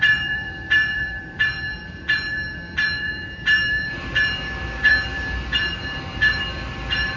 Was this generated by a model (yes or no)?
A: yes